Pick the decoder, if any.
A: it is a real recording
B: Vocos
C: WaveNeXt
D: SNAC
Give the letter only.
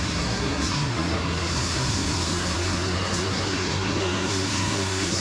D